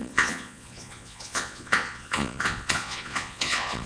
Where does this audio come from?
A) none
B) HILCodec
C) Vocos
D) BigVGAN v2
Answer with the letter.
C